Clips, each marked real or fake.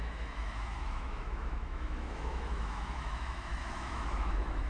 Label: fake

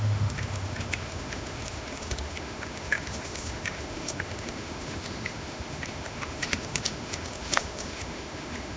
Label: fake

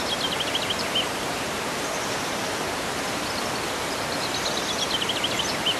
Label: real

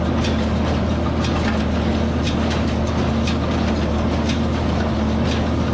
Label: real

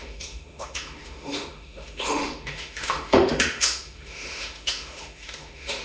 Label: fake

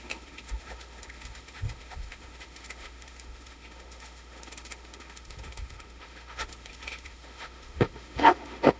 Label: fake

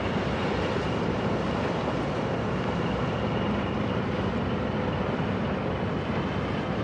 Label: real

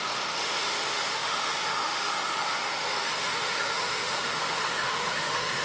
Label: fake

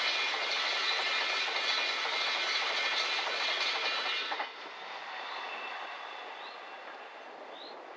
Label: real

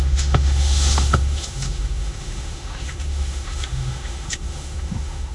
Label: fake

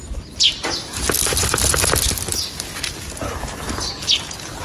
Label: real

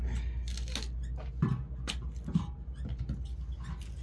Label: real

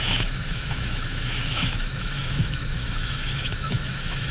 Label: fake